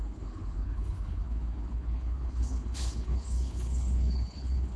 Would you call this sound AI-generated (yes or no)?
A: yes